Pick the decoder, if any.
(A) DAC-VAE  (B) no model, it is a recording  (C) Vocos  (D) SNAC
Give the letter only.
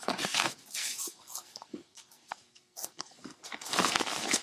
D